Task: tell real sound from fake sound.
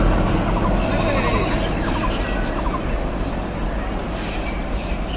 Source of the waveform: real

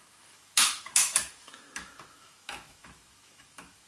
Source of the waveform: fake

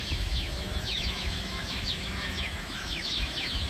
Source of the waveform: fake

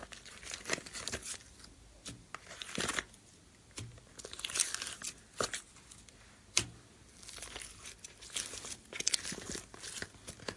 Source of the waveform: real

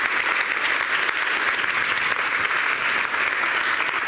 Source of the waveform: real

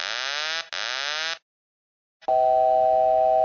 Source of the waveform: real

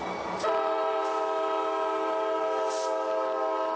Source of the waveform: real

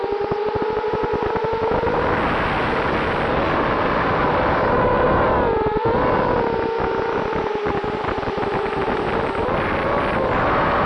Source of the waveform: real